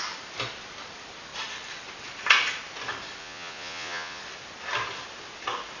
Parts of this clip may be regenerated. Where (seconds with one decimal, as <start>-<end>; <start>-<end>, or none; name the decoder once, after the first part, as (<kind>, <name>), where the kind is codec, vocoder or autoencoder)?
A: 3.2-4.2 (vocoder, Vocos)